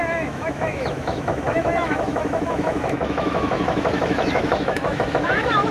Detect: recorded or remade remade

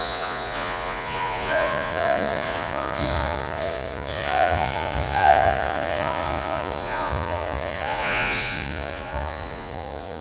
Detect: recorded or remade remade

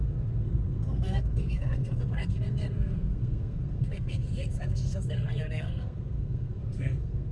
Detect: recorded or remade remade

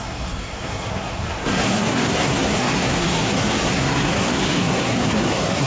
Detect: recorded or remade remade